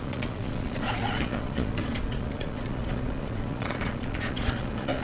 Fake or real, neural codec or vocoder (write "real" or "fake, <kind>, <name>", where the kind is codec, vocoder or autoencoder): fake, vocoder, Vocos